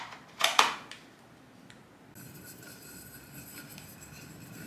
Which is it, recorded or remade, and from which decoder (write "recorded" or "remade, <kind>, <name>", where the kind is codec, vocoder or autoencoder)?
recorded